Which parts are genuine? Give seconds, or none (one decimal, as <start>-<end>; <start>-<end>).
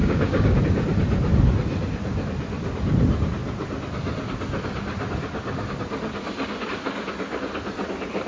0.6-8.3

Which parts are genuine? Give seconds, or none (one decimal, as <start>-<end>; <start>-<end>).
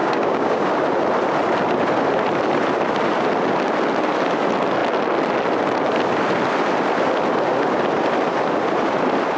0.7-9.4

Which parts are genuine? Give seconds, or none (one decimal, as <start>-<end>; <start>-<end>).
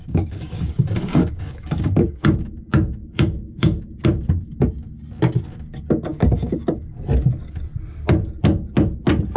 2.5-3.0; 3.8-6.1; 6.9-9.4